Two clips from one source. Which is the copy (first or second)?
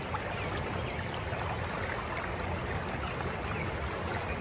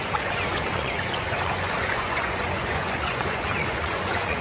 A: second